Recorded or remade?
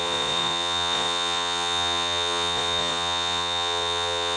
remade